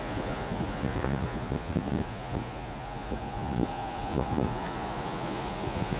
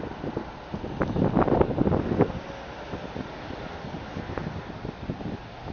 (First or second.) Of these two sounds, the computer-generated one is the first